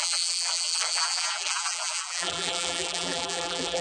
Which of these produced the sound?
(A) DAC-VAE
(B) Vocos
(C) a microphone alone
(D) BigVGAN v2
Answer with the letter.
D